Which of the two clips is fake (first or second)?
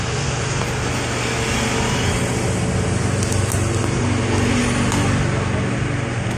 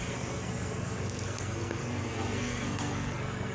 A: second